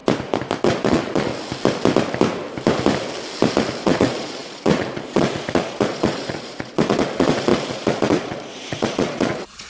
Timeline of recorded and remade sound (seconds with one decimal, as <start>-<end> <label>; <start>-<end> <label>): 0.0-0.6 recorded; 0.6-1.3 remade; 1.3-3.8 recorded; 3.8-9.7 remade

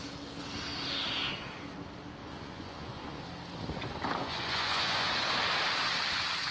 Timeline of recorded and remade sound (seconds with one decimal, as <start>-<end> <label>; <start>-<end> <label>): 0.0-2.2 recorded; 2.2-3.2 remade; 3.2-4.2 recorded; 4.2-5.1 remade; 5.1-6.5 recorded